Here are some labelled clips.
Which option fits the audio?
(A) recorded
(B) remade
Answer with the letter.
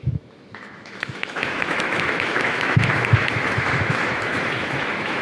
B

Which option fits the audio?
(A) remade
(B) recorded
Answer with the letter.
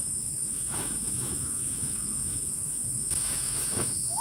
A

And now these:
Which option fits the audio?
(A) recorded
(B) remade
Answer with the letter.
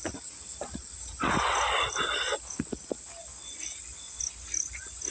A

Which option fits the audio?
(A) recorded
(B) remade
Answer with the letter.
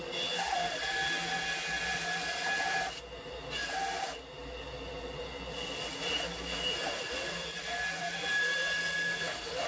A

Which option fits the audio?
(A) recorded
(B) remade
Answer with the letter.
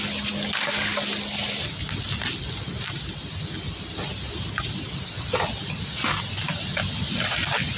A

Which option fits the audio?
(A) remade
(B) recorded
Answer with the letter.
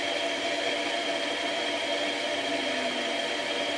B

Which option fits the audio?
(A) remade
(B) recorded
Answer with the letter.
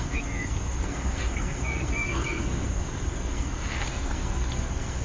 A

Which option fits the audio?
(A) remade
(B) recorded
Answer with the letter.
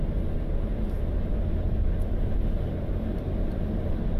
B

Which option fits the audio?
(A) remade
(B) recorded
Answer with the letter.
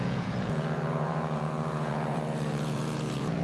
A